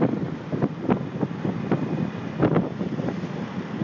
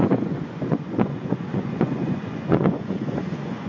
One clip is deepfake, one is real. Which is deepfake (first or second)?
second